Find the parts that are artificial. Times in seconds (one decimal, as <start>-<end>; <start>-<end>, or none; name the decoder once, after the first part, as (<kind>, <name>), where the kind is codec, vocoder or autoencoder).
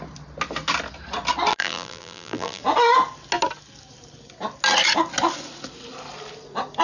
1.5-2.6 (vocoder, BigVGAN v2)